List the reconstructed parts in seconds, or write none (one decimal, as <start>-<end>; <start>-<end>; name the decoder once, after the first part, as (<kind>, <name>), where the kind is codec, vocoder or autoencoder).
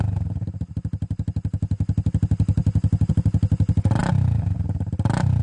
none